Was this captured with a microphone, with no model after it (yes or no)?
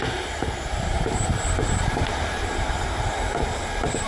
no